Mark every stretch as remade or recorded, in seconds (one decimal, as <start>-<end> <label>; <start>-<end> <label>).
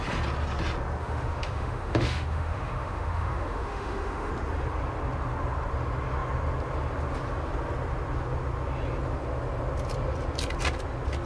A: 0.0-1.0 recorded; 1.0-4.3 remade; 4.3-11.3 recorded